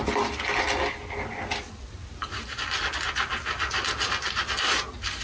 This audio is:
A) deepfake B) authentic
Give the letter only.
B